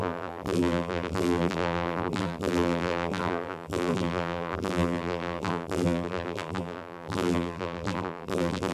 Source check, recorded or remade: remade